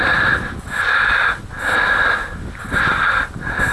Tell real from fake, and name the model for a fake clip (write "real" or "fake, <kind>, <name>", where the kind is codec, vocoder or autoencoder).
real